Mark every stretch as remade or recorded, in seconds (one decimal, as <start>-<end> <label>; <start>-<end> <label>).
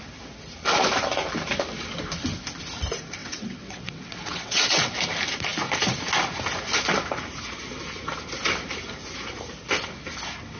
0.0-3.2 recorded; 3.2-5.0 remade; 5.0-10.6 recorded